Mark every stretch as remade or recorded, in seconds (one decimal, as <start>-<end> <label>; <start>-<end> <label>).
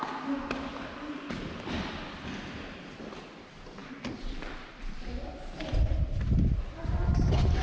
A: 0.0-7.6 recorded